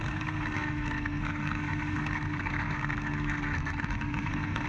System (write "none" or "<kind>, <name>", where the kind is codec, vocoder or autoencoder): codec, SNAC